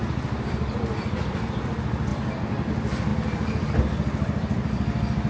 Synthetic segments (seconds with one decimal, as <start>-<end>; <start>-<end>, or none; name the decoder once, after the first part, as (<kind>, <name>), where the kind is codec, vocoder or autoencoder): none